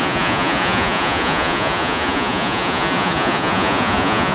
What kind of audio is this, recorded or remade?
remade